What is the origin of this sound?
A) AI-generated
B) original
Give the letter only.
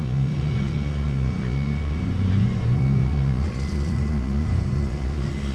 A